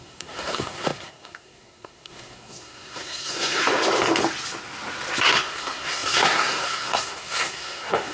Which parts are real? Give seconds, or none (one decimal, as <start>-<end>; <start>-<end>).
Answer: 3.6-5.2